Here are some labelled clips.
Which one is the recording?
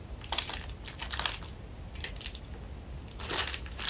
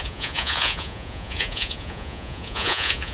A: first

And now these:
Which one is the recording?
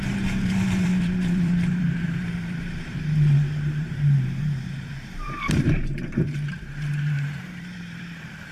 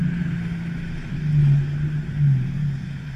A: second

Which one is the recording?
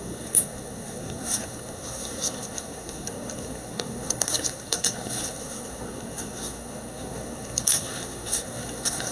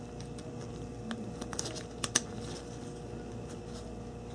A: second